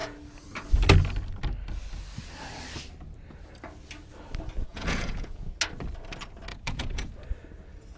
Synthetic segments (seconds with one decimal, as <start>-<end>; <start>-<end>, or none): 4.7-5.5; 6.5-7.1